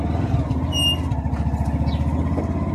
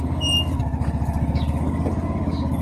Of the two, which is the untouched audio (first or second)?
first